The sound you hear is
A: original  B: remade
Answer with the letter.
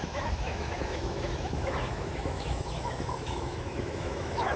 B